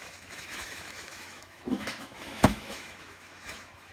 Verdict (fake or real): fake